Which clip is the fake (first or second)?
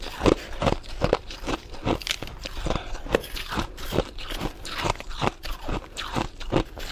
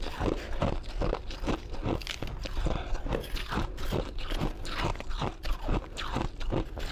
first